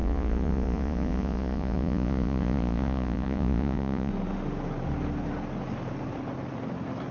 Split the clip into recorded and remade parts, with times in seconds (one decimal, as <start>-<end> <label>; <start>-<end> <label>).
0.0-4.1 remade; 4.1-7.1 recorded